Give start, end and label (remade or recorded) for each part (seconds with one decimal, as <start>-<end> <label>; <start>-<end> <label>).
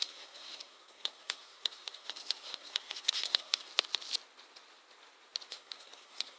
0.0-3.7 remade; 3.7-5.5 recorded; 5.5-6.4 remade